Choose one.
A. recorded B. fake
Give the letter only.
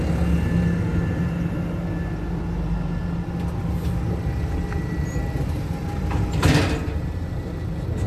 A